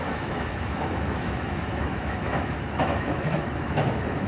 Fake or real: fake